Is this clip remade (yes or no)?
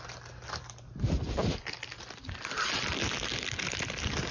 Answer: no